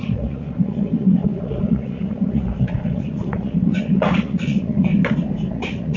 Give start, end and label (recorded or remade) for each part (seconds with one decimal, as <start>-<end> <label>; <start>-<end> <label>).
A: 0.0-4.9 remade; 4.9-5.5 recorded; 5.5-6.0 remade